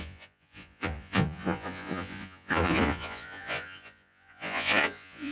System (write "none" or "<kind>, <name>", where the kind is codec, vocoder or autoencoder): vocoder, Vocos